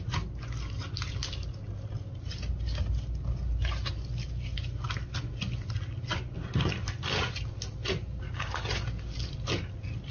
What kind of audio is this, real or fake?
real